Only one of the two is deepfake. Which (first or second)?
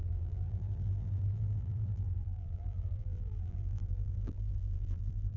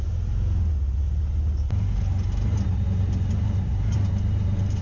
first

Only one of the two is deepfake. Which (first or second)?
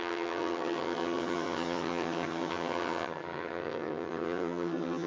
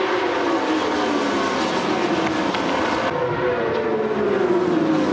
first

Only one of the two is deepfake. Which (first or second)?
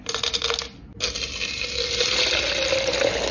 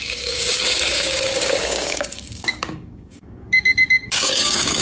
second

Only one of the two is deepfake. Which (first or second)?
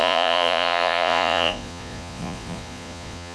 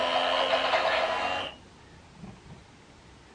first